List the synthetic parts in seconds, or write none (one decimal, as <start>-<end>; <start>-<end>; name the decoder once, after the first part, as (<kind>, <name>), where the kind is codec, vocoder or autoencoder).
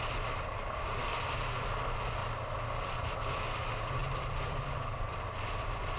1.0-1.5 (vocoder, BigVGAN v2); 2.2-3.2; 4.0-4.7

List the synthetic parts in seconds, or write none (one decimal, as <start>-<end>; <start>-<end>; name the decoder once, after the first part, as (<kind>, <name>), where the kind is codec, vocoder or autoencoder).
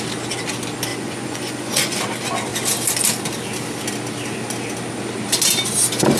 0.9-2.0 (vocoder, Vocos)